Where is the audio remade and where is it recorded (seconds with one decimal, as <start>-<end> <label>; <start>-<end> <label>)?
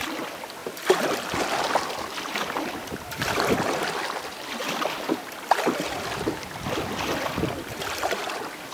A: 0.0-0.6 recorded; 0.6-3.5 remade; 3.5-4.6 recorded; 4.6-8.7 remade